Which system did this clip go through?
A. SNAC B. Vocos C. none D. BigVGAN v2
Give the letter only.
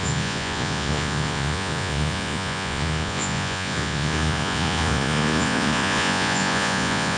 B